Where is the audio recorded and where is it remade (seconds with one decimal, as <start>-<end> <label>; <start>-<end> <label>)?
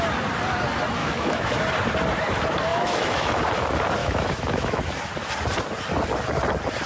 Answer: 0.0-1.0 recorded; 1.0-1.6 remade; 1.6-2.7 recorded; 2.7-3.4 remade; 3.4-4.0 recorded; 4.0-4.8 remade; 4.8-6.9 recorded